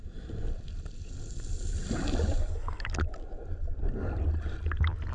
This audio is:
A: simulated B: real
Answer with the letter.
B